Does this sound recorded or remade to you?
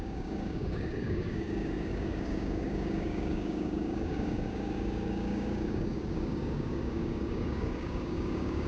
remade